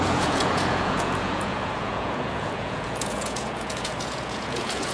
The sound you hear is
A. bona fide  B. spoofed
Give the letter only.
B